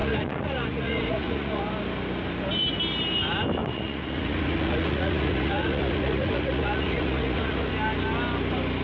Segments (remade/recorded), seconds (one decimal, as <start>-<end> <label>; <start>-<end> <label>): 0.0-1.6 remade; 1.6-3.6 recorded; 3.6-7.7 remade; 7.7-8.8 recorded